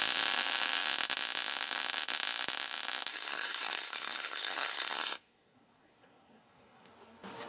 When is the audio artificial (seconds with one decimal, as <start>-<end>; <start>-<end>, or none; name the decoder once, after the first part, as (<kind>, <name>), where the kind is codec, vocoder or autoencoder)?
3.1-6.9 (codec, SNAC)